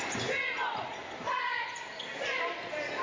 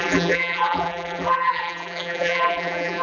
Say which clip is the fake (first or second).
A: second